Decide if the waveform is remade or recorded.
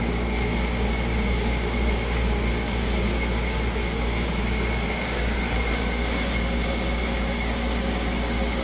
remade